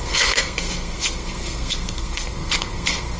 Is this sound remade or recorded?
remade